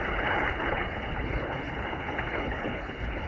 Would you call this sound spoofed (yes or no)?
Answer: yes